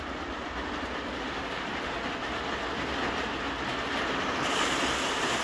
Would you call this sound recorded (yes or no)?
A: yes